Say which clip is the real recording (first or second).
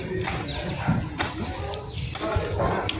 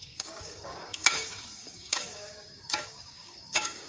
first